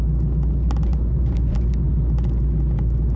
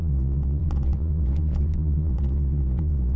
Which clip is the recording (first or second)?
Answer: first